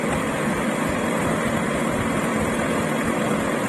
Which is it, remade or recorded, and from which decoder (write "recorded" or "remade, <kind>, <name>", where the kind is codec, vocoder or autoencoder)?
recorded